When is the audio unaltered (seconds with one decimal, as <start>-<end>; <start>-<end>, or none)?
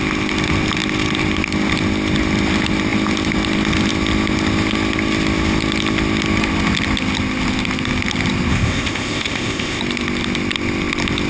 0.0-8.5; 9.8-11.3